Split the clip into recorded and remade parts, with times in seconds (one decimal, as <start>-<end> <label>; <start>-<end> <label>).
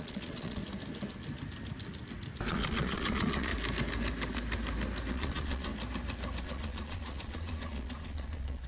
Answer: 0.0-0.6 remade; 0.6-2.5 recorded; 2.5-3.5 remade; 3.5-5.1 recorded; 5.1-5.7 remade; 5.7-6.4 recorded; 6.4-8.7 remade